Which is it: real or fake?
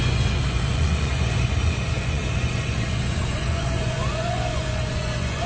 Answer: fake